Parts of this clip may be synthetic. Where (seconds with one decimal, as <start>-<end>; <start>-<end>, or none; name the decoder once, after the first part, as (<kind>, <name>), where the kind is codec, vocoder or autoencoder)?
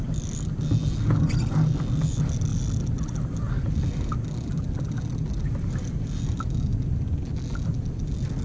none